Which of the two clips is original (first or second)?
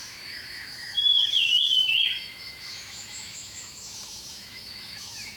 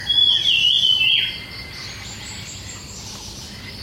second